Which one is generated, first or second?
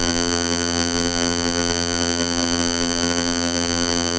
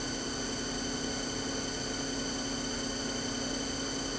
first